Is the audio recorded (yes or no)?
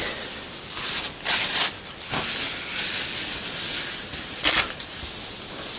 yes